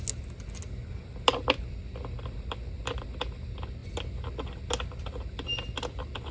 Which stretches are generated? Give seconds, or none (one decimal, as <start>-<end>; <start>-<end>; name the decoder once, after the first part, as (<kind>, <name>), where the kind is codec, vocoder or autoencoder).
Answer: none